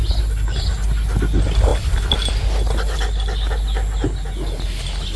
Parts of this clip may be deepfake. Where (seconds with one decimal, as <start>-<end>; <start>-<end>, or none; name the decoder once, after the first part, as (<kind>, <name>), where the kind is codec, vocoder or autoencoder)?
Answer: none